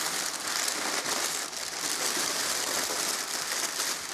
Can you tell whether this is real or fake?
real